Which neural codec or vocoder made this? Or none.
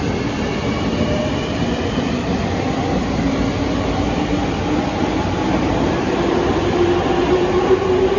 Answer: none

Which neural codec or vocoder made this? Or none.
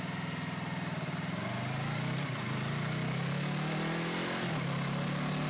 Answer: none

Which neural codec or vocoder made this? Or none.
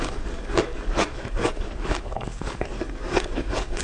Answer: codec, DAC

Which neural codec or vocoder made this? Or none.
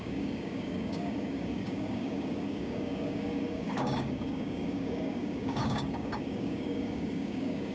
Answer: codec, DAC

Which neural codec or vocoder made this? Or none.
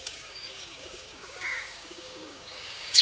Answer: codec, DAC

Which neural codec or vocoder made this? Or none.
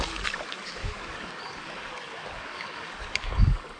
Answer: codec, DAC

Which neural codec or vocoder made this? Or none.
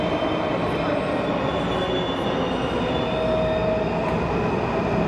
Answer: none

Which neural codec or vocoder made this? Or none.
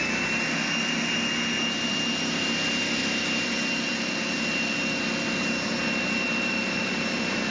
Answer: none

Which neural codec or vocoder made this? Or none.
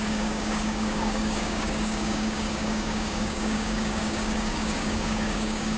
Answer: codec, DAC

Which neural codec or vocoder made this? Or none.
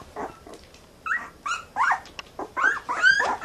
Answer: none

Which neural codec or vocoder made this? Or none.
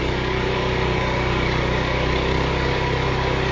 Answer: codec, DAC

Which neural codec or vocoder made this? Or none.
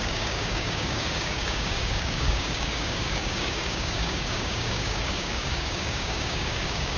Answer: codec, DAC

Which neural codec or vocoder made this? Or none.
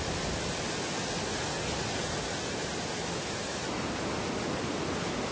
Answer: none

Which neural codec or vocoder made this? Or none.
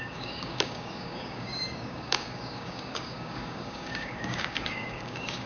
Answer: codec, DAC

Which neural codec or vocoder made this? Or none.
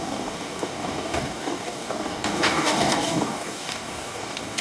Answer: codec, DAC